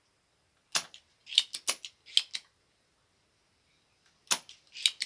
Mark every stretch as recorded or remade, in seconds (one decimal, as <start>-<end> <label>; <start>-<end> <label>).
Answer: 0.0-5.1 recorded